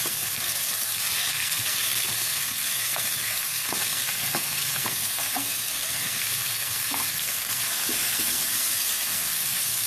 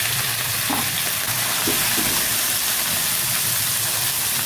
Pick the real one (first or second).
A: second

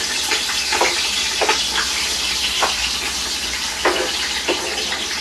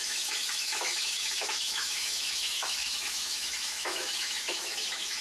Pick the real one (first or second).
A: first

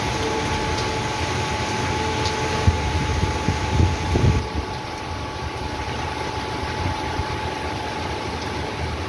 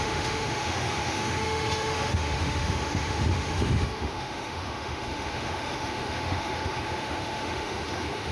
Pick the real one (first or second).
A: first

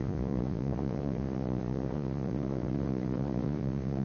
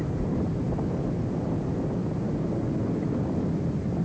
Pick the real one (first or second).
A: second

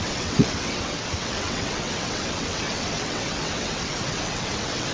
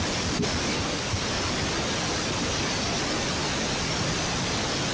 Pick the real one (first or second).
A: second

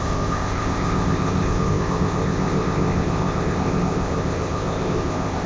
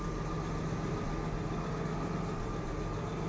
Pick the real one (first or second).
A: second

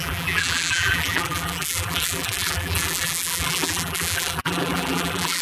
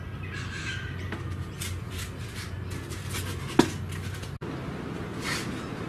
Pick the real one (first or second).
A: second